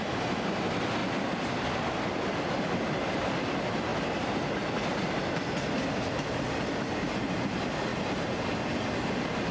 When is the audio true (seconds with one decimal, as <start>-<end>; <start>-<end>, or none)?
0.0-9.5